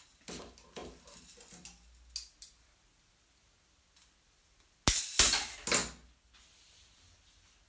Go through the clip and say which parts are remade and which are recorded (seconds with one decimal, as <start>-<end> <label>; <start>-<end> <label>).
0.0-7.7 recorded

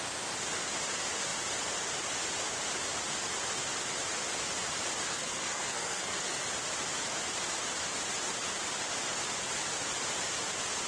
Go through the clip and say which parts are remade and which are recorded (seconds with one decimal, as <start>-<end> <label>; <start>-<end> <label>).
0.0-5.1 recorded; 5.1-6.5 remade; 6.5-10.9 recorded

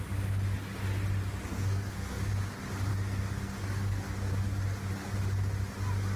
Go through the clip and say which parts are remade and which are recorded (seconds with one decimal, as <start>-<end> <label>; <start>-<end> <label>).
0.0-1.5 recorded; 1.5-2.3 remade; 2.3-2.9 recorded; 2.9-4.3 remade; 4.3-6.2 recorded